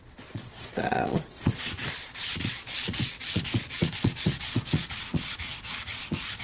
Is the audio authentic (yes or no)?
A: no